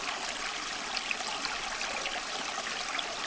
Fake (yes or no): no